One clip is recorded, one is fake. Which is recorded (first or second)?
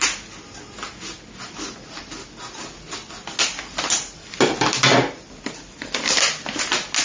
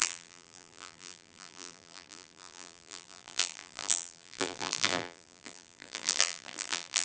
first